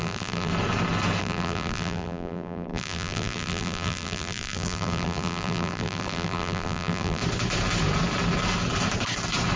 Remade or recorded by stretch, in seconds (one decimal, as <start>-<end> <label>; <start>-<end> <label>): 0.0-0.5 remade; 0.5-1.2 recorded; 1.2-7.2 remade; 7.2-9.6 recorded

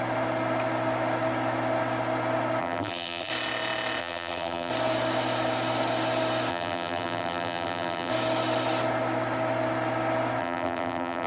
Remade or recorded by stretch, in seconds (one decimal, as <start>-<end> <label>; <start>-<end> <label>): 0.0-2.6 recorded; 2.6-3.3 remade; 3.3-4.0 recorded; 4.0-4.7 remade; 4.7-6.5 recorded; 6.5-8.1 remade; 8.1-10.4 recorded; 10.4-11.3 remade